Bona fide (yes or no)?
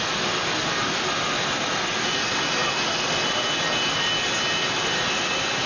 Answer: yes